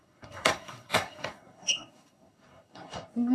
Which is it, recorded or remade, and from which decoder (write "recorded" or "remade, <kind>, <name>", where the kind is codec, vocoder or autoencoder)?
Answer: remade, codec, SNAC